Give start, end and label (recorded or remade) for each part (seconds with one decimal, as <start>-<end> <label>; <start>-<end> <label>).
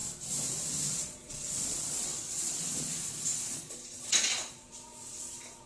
0.0-0.9 recorded; 0.9-5.7 remade